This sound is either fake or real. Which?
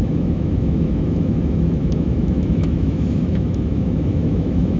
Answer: fake